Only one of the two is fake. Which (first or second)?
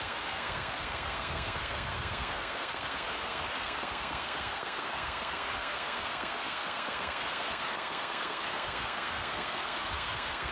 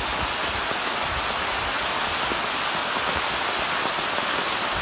first